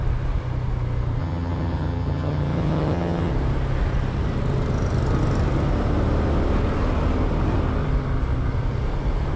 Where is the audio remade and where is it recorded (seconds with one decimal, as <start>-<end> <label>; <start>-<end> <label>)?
0.0-1.2 recorded; 1.2-3.3 remade; 3.3-9.4 recorded